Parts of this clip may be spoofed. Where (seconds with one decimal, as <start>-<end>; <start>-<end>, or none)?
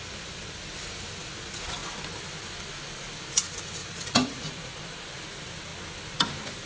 3.8-4.5